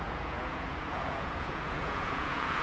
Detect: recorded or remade remade